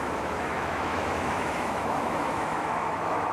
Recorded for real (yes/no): no